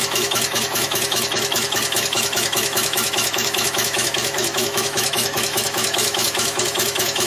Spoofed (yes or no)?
yes